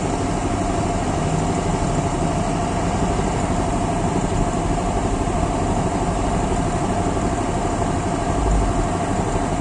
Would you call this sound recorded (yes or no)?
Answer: yes